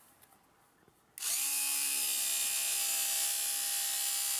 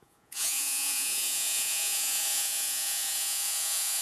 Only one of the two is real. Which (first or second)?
first